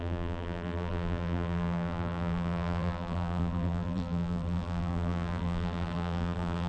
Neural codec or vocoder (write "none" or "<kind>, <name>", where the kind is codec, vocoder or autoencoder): vocoder, BigVGAN v2